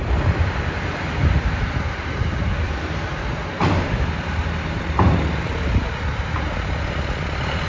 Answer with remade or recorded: remade